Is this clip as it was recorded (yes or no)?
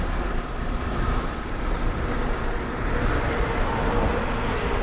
yes